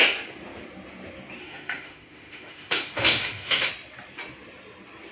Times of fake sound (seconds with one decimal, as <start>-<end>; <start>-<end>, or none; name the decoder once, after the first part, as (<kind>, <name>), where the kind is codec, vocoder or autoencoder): 1.4-3.7 (autoencoder, DAC-VAE)